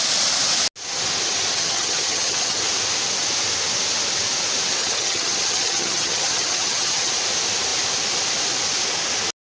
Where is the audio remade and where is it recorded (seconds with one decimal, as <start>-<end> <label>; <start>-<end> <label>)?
0.0-1.5 recorded; 1.5-2.6 remade; 2.6-4.8 recorded; 4.8-7.1 remade; 7.1-9.5 recorded